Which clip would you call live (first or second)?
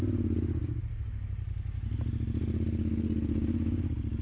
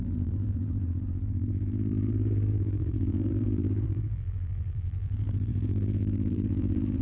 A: first